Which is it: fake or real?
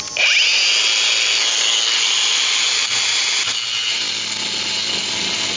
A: real